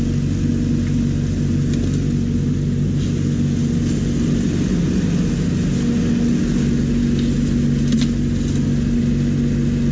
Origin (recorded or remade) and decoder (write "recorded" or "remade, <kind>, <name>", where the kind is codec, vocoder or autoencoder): recorded